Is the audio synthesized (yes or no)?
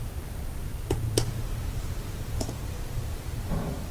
yes